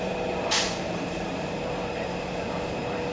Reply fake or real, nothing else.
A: fake